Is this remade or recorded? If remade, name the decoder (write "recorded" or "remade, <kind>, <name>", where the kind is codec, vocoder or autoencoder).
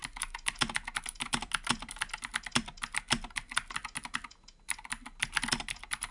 recorded